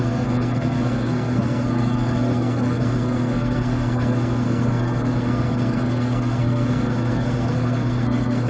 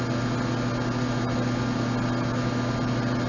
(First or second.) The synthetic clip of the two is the first